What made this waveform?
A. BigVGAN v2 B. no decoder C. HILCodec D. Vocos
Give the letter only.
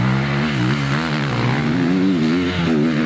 B